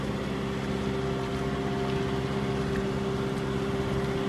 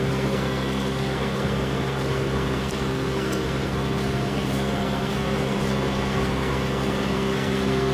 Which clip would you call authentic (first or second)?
first